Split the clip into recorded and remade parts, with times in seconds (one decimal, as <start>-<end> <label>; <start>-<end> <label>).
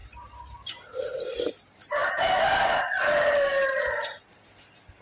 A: 0.0-5.0 recorded